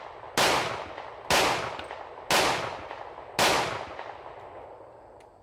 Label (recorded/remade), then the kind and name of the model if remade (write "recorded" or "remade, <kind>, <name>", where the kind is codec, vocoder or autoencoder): recorded